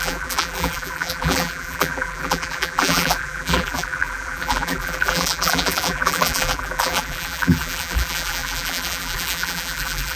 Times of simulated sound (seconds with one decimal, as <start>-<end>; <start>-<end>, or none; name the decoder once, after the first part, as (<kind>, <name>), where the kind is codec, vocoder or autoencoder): 0.0-10.2 (vocoder, BigVGAN v2)